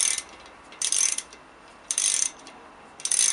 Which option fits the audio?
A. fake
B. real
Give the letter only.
B